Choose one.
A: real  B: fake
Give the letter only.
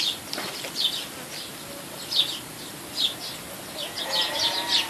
A